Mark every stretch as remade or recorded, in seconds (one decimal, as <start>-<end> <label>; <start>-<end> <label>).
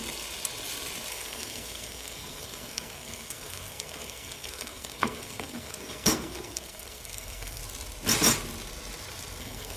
0.0-1.1 recorded; 1.1-7.6 remade; 7.6-9.4 recorded; 9.4-9.8 remade